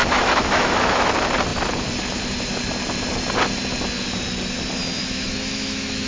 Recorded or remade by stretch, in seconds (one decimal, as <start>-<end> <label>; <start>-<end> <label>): 0.0-1.1 remade; 1.1-5.0 recorded; 5.0-6.1 remade